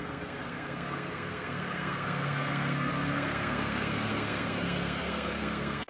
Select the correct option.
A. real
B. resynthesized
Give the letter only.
B